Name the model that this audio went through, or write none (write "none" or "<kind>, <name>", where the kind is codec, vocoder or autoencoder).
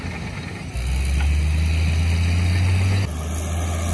none